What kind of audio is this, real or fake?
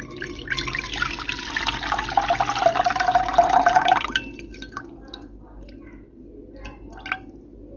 real